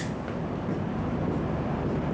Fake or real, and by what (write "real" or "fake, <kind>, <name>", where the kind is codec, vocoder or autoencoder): real